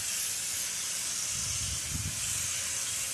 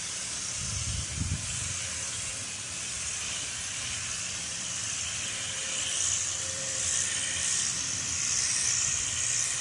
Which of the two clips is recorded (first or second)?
first